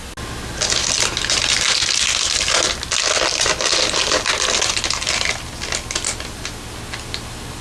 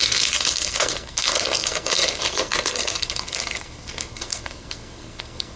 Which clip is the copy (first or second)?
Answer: second